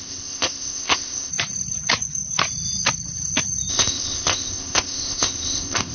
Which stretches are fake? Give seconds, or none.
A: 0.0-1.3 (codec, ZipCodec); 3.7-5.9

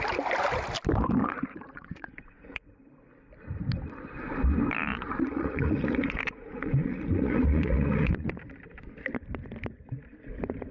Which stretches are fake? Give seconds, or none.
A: 1.2-2.9 (vocoder, Vocos); 4.9-8.3

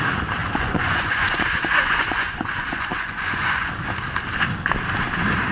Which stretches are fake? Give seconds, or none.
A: 0.4-3.7 (vocoder, Vocos)

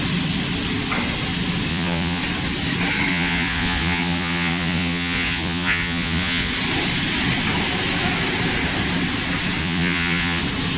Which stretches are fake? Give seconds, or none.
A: 1.7-2.2 (vocoder, Vocos); 3.1-6.5; 9.6-10.4

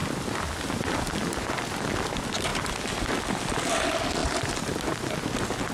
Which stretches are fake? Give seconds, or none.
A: none